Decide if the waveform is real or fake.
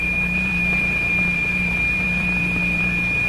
fake